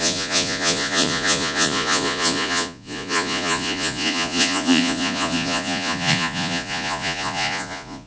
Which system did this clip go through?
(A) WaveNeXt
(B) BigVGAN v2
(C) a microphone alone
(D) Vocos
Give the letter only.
D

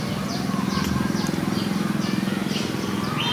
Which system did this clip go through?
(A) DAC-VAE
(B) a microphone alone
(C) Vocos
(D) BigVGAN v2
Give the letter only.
B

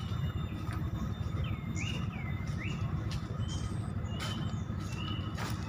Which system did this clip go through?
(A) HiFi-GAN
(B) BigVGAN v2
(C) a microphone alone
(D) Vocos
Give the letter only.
C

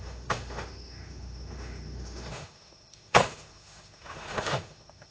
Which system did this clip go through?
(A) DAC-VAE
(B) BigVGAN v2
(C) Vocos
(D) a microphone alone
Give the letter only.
A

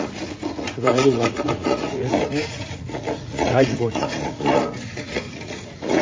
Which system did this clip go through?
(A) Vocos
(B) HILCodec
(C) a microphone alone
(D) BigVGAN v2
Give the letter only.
A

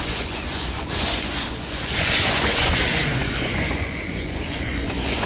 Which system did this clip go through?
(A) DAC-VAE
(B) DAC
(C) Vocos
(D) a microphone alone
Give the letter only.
C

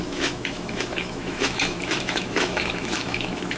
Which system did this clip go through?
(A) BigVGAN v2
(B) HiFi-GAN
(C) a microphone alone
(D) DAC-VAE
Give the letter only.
D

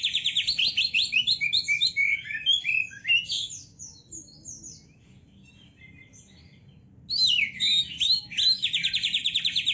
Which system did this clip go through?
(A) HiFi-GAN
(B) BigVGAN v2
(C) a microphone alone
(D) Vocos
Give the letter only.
C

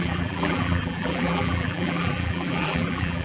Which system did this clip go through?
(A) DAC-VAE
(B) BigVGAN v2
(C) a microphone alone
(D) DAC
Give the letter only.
B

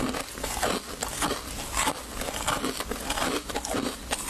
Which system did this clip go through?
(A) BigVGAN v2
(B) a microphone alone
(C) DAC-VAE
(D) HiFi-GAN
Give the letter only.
B